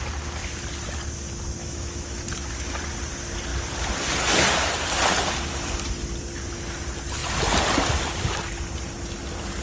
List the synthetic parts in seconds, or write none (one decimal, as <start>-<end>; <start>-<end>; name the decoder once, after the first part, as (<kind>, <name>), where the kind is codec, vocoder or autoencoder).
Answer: 1.6-2.2 (autoencoder, DAC-VAE)